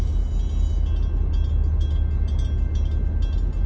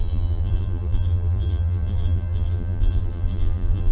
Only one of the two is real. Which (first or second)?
first